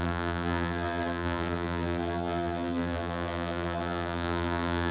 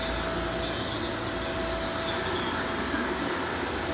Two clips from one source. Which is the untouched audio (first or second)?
second